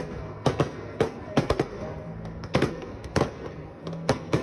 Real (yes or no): no